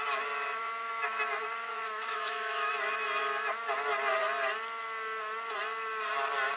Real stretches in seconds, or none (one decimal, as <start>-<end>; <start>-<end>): 0.0-1.7; 2.7-6.6